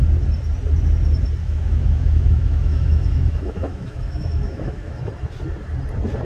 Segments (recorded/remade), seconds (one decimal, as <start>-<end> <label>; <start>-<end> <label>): 0.0-1.4 recorded; 1.4-5.1 remade; 5.1-6.2 recorded

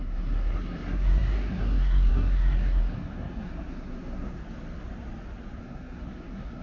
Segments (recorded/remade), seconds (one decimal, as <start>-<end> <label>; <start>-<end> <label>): 0.0-4.4 remade; 4.4-5.6 recorded; 5.6-6.6 remade

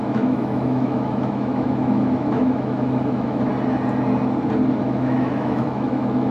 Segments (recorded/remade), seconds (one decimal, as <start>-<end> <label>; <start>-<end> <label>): 0.0-3.5 remade; 3.5-4.8 recorded; 4.8-6.3 remade

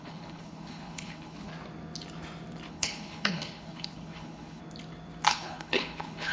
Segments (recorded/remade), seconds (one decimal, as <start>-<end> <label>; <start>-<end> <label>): 0.0-1.5 remade; 1.5-2.7 recorded; 2.7-4.6 remade; 4.6-5.3 recorded; 5.3-6.3 remade

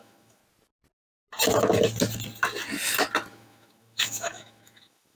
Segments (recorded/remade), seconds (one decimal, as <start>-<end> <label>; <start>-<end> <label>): 0.0-0.4 remade; 0.4-3.3 recorded; 3.3-5.2 remade